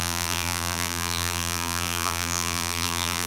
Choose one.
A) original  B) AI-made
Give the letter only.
B